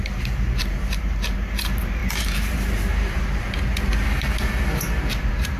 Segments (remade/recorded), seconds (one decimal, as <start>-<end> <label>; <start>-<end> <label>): 0.0-5.6 remade